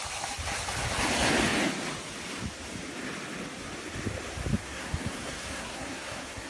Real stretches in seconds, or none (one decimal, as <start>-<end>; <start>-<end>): 0.0-4.6